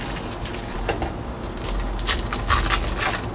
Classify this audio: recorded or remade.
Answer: recorded